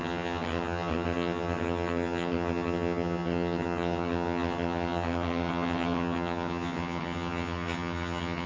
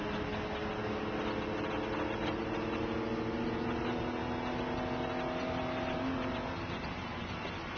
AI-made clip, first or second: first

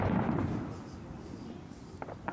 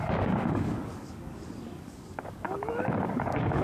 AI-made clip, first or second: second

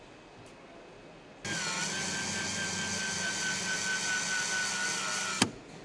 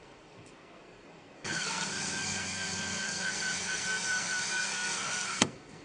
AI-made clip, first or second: second